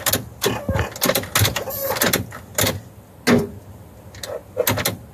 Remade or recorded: recorded